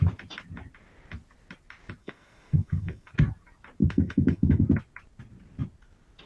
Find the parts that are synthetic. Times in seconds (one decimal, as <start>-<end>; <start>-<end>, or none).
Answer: 2.0-3.1; 3.8-4.6